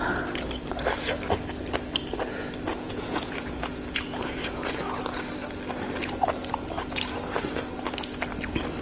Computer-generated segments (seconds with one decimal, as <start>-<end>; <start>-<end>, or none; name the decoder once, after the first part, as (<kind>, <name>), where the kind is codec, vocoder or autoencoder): 2.7-4.8 (vocoder, Vocos)